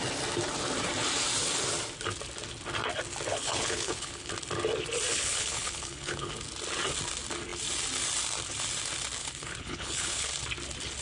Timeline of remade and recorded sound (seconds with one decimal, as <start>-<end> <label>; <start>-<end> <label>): 0.0-3.3 recorded; 3.3-4.3 remade; 4.3-5.1 recorded; 5.1-6.3 remade; 6.3-9.2 recorded; 9.2-10.3 remade; 10.3-11.0 recorded